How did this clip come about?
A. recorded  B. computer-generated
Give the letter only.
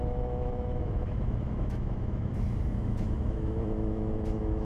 B